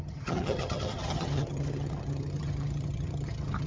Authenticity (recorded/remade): remade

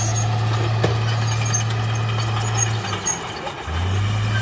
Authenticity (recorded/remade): recorded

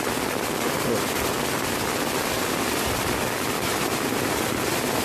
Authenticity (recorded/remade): recorded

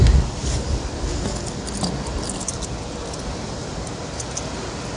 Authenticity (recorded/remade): recorded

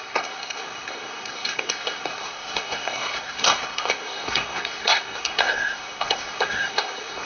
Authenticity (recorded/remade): remade